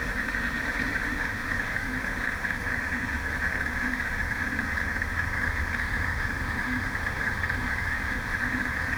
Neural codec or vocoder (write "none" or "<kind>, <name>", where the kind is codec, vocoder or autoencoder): autoencoder, DAC-VAE